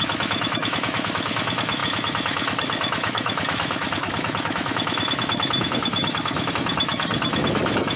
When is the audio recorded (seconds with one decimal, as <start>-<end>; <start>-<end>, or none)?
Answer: none